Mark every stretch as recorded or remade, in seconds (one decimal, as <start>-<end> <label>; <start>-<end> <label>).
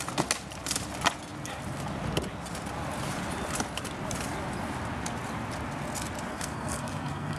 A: 0.0-6.3 recorded; 6.3-7.4 remade